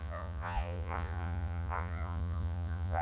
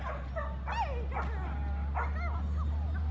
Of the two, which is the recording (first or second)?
second